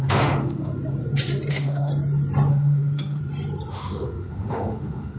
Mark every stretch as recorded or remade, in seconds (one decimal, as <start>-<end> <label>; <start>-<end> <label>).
0.0-0.7 remade; 0.7-1.5 recorded; 1.5-1.9 remade; 1.9-2.5 recorded; 2.5-3.2 remade; 3.2-3.7 recorded; 3.7-5.2 remade